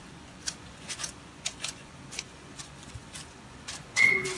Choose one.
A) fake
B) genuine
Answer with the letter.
A